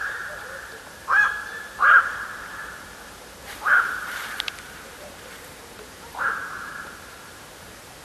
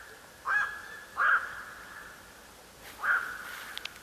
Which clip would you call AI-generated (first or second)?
first